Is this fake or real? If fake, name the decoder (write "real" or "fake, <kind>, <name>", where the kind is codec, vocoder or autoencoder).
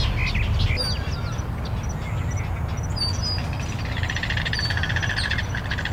real